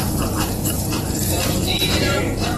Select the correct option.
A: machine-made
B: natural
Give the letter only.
A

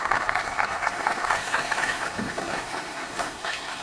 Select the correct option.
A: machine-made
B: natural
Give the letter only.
A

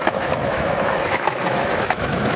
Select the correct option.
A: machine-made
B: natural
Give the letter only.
A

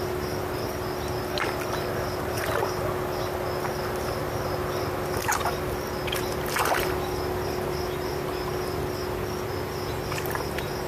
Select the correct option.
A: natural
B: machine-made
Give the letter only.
A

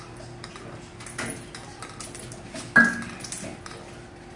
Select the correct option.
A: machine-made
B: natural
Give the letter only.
B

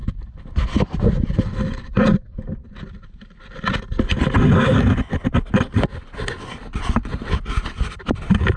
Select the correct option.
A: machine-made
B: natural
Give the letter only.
B